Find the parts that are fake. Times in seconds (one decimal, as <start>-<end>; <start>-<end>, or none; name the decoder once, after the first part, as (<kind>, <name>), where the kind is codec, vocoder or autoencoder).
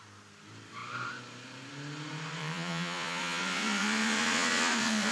2.4-5.1 (vocoder, Vocos)